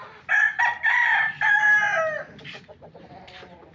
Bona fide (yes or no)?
yes